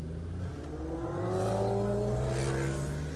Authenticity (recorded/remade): recorded